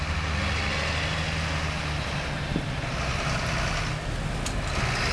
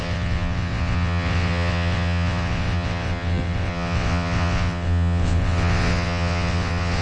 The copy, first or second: second